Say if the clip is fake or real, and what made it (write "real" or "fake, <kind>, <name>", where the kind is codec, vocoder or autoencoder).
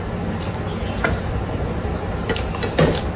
real